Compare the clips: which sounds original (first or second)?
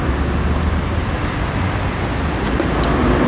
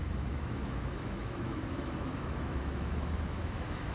first